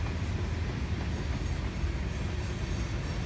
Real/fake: real